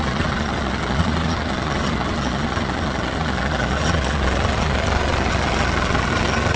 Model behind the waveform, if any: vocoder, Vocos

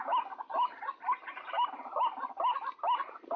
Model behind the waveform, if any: none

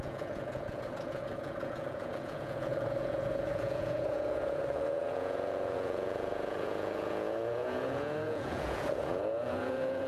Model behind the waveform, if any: vocoder, Vocos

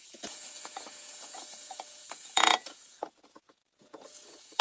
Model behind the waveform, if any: vocoder, Vocos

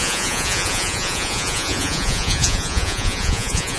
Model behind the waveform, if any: vocoder, Vocos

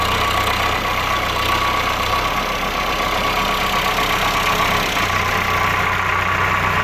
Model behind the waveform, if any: none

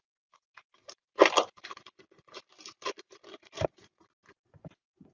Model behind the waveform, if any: none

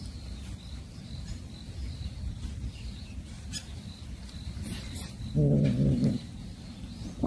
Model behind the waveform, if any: none